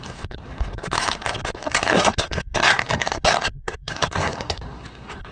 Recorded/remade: remade